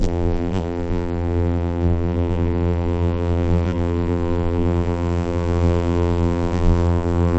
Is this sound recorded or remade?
remade